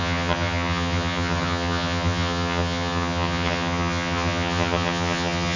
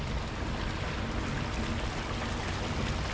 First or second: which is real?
second